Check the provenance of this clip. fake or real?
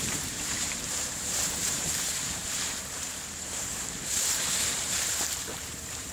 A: fake